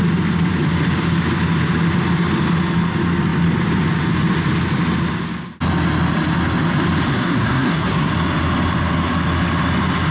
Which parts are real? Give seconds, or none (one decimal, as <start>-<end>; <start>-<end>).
0.0-7.1; 8.1-10.1